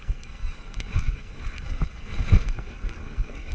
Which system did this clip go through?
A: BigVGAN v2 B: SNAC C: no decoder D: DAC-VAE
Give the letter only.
B